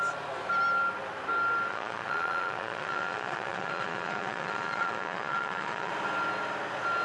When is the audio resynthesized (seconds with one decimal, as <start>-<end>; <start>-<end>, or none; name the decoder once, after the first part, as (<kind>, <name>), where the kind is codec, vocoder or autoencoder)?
1.7-5.9 (vocoder, Vocos)